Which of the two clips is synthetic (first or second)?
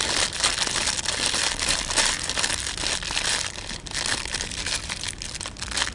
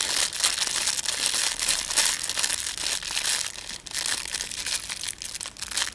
first